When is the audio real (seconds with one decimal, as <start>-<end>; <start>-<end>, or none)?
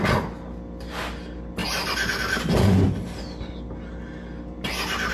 0.0-5.1